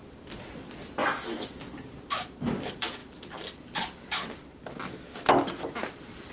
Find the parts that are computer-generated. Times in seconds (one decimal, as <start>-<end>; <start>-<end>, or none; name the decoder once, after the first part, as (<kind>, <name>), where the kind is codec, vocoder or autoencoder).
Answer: 1.0-1.5 (autoencoder, DAC-VAE)